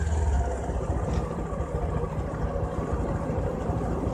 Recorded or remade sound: recorded